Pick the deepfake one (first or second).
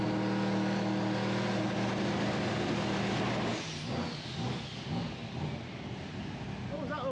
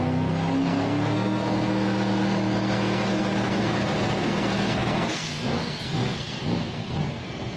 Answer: second